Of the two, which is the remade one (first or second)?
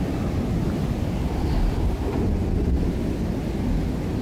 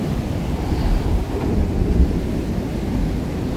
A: second